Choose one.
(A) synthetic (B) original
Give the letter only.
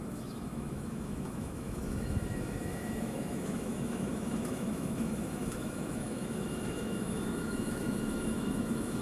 A